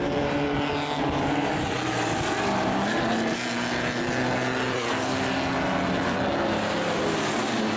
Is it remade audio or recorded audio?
recorded